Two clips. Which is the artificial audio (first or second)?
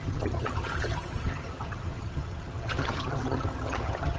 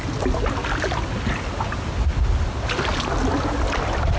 first